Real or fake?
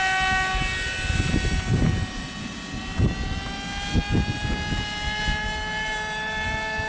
real